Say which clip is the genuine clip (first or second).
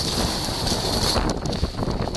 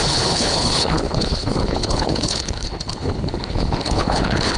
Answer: first